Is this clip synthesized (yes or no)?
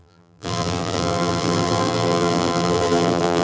yes